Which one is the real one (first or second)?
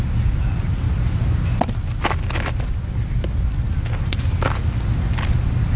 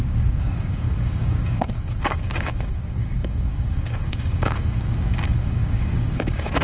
first